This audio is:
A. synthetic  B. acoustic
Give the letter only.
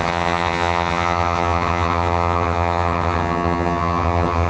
A